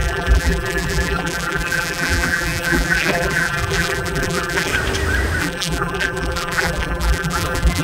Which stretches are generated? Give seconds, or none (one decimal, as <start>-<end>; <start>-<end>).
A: 0.0-4.7; 5.4-7.8